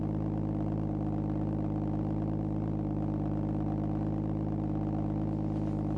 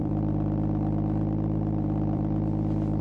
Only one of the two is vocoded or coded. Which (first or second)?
second